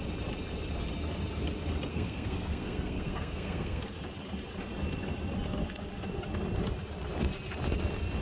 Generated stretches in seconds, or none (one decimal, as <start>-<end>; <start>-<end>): 1.9-3.8